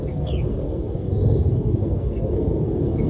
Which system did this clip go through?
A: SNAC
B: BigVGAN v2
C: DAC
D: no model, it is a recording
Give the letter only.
A